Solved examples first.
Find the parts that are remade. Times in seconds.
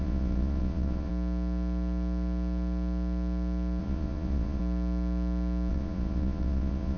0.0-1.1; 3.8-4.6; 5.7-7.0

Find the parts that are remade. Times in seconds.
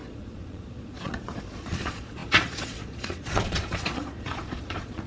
0.0-5.1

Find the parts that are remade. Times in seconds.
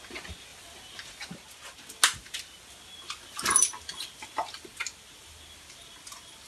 none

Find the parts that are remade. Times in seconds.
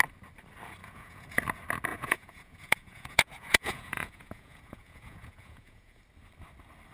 0.8-1.4; 1.9-6.0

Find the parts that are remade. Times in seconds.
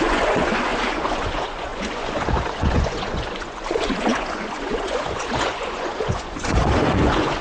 0.0-7.4